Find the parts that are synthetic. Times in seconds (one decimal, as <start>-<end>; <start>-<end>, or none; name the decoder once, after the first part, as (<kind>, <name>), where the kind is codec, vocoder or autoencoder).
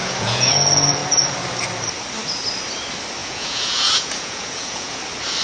0.0-0.5 (vocoder, Vocos); 3.2-5.0